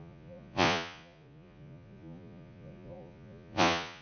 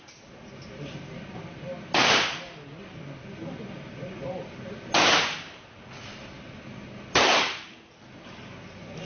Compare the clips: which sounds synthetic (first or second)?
first